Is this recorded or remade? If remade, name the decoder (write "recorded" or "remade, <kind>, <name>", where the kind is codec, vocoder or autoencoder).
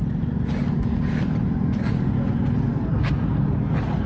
recorded